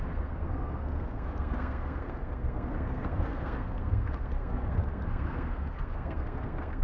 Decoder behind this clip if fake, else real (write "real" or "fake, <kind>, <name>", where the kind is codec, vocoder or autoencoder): fake, codec, SNAC